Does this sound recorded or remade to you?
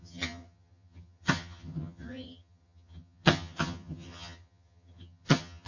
remade